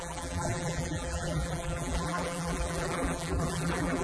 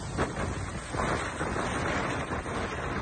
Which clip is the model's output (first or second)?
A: first